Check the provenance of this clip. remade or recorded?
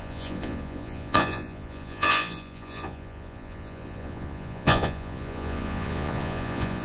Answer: remade